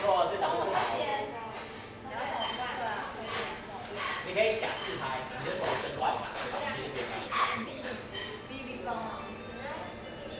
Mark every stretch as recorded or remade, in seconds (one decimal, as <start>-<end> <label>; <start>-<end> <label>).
0.0-5.5 recorded; 5.5-6.6 remade; 6.6-7.2 recorded; 7.2-7.9 remade; 7.9-10.4 recorded